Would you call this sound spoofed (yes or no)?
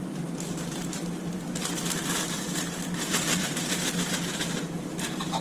yes